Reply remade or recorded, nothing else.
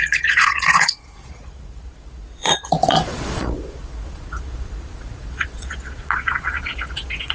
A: remade